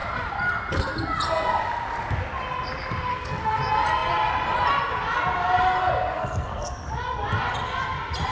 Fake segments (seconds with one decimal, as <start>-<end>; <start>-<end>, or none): 3.1-3.6; 6.1-6.7